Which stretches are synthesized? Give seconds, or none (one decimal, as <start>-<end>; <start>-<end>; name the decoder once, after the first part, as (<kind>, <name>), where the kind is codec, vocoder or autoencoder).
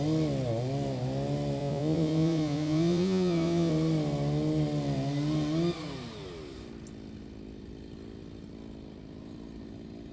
1.6-3.7 (vocoder, Vocos)